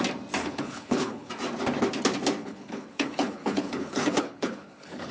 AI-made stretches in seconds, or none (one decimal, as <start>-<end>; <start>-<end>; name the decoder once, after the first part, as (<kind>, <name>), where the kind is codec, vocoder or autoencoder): 0.4-1.3 (codec, HILCodec); 2.4-5.1